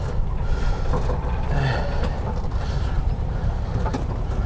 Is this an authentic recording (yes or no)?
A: yes